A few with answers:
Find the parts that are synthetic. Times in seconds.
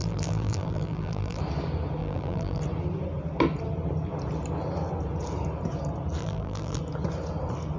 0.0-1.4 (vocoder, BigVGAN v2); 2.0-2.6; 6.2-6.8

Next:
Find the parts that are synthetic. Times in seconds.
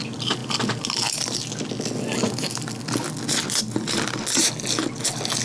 none